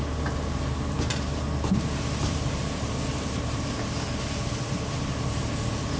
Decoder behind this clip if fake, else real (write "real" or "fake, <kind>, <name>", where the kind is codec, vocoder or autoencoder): real